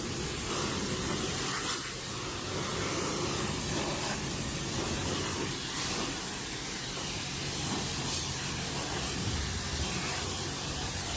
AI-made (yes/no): no